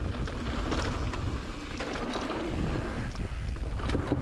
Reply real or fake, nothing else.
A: real